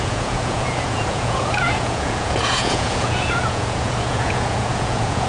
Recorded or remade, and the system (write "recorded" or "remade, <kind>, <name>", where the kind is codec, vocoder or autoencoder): remade, vocoder, Vocos